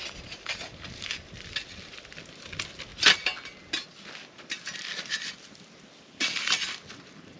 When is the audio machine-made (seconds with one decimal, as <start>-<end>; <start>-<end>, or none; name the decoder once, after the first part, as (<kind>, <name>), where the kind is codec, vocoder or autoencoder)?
none